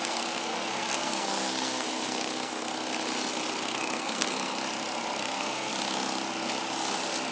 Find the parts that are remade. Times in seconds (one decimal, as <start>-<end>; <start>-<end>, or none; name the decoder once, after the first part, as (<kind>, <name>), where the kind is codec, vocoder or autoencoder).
0.0-2.7 (codec, SNAC); 3.6-4.6; 5.2-5.7